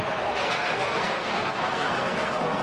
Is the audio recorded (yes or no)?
no